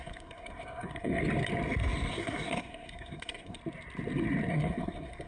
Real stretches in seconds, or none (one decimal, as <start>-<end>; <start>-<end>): 1.2-2.1; 3.6-4.5

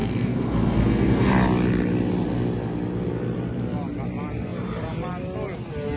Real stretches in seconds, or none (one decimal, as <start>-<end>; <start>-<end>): 1.3-6.0

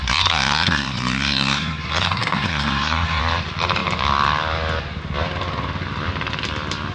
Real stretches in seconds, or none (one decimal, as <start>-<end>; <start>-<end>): 3.2-6.9

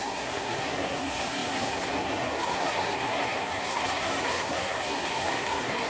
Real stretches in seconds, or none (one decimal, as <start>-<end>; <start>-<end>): none